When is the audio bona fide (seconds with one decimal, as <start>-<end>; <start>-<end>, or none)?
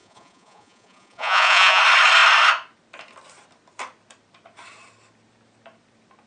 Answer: 1.8-6.3